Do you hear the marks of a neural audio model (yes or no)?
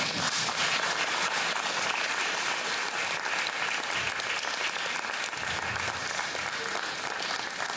no